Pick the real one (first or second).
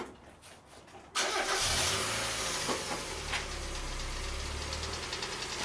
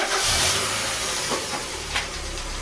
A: first